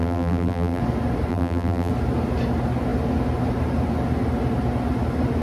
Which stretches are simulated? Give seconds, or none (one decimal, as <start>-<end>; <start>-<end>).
0.0-0.8; 1.3-1.9